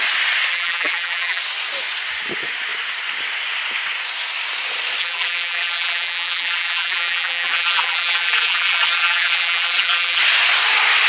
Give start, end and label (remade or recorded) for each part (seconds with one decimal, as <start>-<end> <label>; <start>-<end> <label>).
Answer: 0.0-0.5 recorded; 0.5-1.4 remade; 1.4-5.0 recorded; 5.0-10.2 remade; 10.2-11.1 recorded